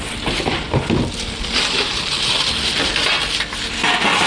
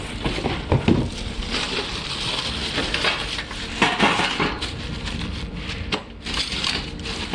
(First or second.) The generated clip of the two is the second